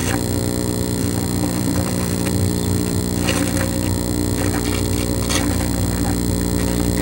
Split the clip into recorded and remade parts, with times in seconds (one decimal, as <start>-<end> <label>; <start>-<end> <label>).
0.0-3.0 remade; 3.0-7.0 recorded